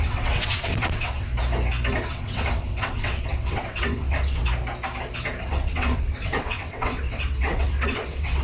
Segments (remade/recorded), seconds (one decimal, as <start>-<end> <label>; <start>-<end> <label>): 0.0-1.3 remade; 1.3-2.0 recorded; 2.0-4.4 remade; 4.4-5.4 recorded; 5.4-8.4 remade